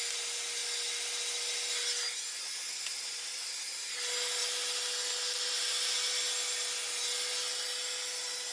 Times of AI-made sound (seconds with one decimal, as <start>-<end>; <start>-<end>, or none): none